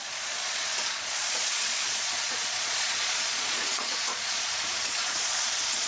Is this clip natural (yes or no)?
no